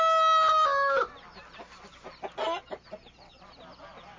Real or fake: real